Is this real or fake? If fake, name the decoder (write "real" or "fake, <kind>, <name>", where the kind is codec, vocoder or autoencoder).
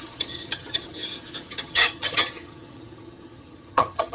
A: fake, vocoder, HiFi-GAN